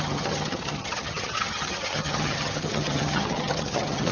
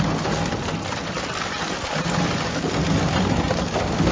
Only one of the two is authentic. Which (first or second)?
second